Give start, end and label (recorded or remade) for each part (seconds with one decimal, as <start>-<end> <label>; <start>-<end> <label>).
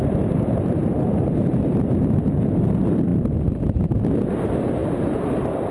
0.0-5.7 remade